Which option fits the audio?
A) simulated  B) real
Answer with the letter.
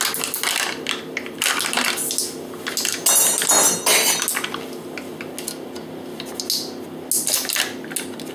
B